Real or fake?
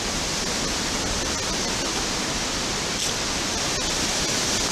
real